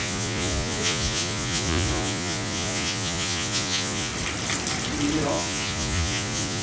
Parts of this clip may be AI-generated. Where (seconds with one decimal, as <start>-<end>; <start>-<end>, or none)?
0.0-4.1; 5.3-6.6